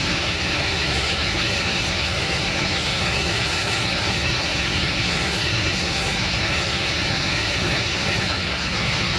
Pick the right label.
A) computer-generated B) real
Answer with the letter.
A